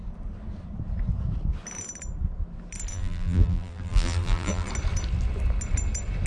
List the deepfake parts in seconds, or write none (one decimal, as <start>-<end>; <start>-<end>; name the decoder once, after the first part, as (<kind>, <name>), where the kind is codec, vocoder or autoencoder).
2.9-4.7 (vocoder, BigVGAN v2)

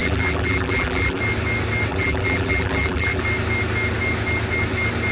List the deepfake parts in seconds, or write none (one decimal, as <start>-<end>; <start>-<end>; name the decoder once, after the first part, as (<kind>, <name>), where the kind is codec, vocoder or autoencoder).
0.0-1.2 (vocoder, BigVGAN v2); 1.9-3.2

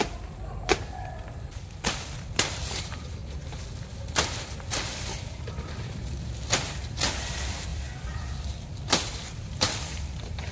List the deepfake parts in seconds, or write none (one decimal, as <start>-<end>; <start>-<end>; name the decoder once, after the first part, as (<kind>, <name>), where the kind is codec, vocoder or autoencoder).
0.0-3.2 (vocoder, BigVGAN v2); 7.3-10.5

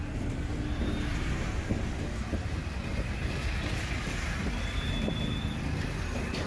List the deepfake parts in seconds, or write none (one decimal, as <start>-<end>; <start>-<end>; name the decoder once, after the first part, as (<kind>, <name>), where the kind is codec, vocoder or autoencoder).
none

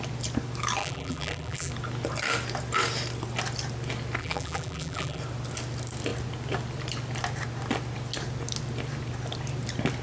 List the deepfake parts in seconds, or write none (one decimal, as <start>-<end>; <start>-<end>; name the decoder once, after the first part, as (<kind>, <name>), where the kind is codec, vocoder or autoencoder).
0.8-1.7 (vocoder, BigVGAN v2); 4.2-5.2